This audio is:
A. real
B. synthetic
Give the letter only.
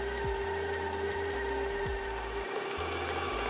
A